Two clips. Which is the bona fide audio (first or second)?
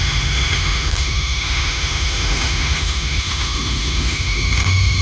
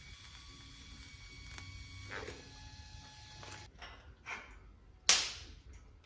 second